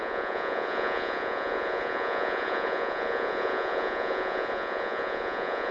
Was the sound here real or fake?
fake